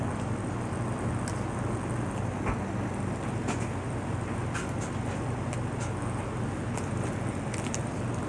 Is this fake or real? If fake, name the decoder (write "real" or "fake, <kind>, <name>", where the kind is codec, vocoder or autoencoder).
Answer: real